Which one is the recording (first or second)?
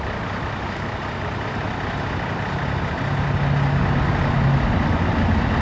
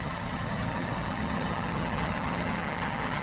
first